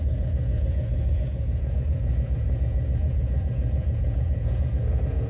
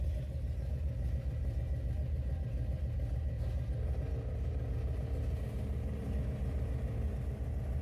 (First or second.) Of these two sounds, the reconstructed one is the first